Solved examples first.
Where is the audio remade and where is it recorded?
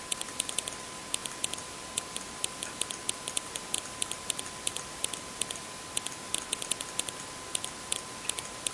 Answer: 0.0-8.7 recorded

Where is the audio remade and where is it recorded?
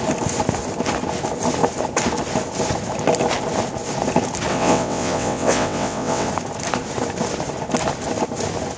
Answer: 0.0-4.5 recorded; 4.5-6.3 remade; 6.3-8.8 recorded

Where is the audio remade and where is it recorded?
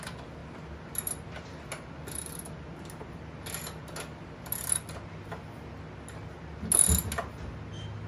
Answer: 0.0-8.1 recorded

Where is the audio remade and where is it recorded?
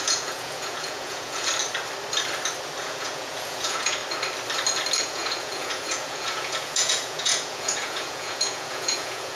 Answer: 0.0-1.5 remade; 1.5-2.8 recorded; 2.8-4.0 remade; 4.0-5.0 recorded; 5.0-9.4 remade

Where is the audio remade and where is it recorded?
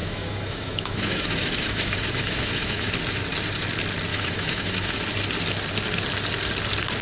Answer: 0.0-2.9 remade; 2.9-4.1 recorded; 4.1-5.0 remade; 5.0-7.0 recorded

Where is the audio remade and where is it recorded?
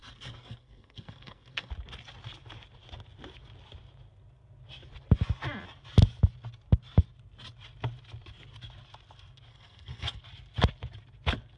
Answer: 0.0-1.7 remade; 1.7-9.5 recorded; 9.5-10.2 remade; 10.2-11.6 recorded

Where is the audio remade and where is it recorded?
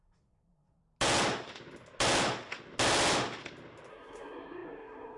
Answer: 0.0-0.8 remade; 0.8-3.9 recorded; 3.9-5.2 remade